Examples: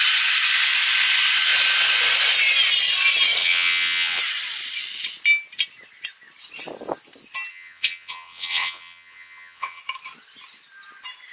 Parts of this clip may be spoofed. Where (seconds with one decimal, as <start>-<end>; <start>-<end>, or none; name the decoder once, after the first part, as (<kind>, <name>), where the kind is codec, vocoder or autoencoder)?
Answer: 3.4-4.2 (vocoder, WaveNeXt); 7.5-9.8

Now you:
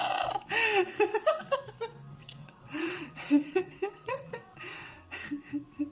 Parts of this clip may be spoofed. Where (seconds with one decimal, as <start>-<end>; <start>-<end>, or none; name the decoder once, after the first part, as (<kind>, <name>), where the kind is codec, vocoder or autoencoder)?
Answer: 2.2-5.0 (vocoder, WaveNeXt)

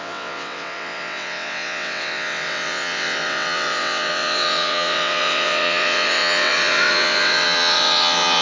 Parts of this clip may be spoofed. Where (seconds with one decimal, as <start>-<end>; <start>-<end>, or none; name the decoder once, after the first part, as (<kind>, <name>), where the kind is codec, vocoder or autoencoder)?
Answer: 0.0-8.4 (vocoder, WaveNeXt)